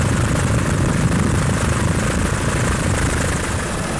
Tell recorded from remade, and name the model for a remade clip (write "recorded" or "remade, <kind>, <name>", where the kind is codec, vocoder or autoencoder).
recorded